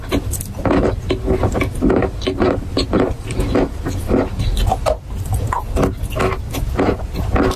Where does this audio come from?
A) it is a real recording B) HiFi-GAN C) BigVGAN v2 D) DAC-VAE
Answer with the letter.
A